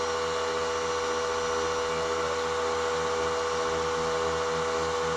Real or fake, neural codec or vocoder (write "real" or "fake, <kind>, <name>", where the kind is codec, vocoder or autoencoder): real